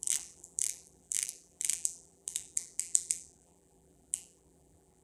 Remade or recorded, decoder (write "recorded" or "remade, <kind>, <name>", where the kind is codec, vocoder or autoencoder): remade, vocoder, BigVGAN v2